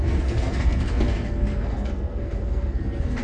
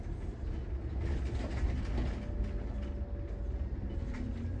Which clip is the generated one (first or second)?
first